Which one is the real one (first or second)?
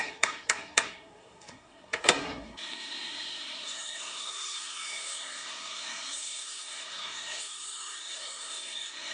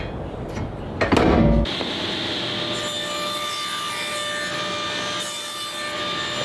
second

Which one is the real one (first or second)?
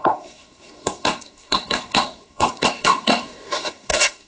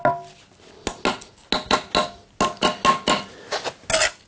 second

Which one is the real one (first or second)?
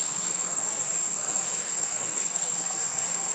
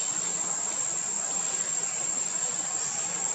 second